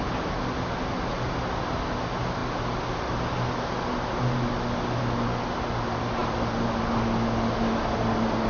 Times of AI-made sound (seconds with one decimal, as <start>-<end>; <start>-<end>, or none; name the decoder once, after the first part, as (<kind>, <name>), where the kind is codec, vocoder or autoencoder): none